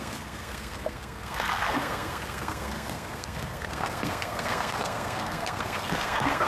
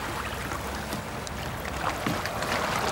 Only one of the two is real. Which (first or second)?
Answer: second